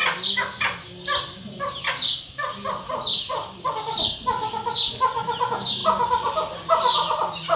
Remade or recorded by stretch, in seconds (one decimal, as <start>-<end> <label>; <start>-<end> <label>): 0.0-7.6 recorded